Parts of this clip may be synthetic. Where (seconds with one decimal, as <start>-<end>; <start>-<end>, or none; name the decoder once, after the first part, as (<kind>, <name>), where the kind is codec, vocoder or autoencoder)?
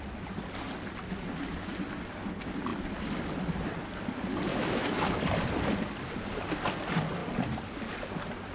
4.5-5.1 (autoencoder, DAC-VAE)